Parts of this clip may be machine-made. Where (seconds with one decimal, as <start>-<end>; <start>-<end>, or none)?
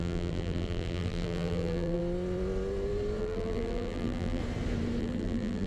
0.0-2.0; 3.2-4.4; 5.0-5.7